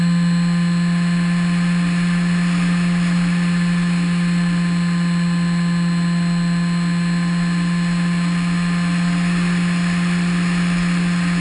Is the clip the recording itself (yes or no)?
yes